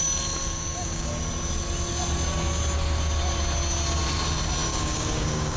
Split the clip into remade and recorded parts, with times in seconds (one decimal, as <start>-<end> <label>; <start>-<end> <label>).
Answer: 0.0-0.4 recorded; 0.4-1.1 remade; 1.1-4.7 recorded; 4.7-5.6 remade